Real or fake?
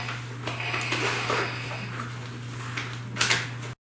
real